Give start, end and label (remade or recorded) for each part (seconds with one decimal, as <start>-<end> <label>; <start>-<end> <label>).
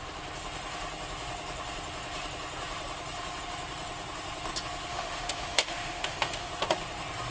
0.0-4.9 recorded; 4.9-6.5 remade; 6.5-7.3 recorded